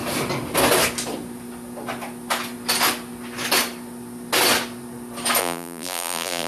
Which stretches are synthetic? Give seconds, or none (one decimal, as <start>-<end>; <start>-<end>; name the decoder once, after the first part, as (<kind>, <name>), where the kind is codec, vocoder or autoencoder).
5.4-6.5 (vocoder, BigVGAN v2)